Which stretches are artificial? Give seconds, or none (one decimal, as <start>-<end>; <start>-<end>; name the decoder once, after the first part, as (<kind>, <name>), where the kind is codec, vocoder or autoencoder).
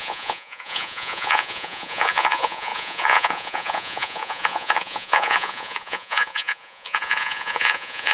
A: 0.0-8.1 (vocoder, Vocos)